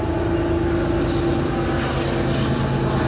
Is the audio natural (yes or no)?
yes